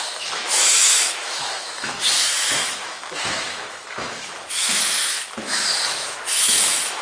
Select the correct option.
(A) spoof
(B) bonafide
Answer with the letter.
A